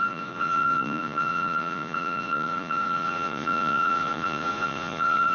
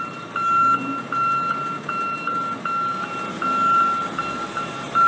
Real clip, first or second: second